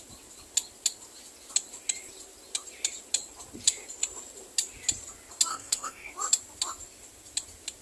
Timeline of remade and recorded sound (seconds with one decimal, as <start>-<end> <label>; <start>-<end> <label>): 0.0-5.5 recorded; 5.5-6.1 remade; 6.1-7.8 recorded